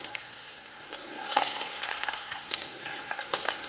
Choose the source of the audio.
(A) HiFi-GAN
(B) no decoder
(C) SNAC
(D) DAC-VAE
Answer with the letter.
C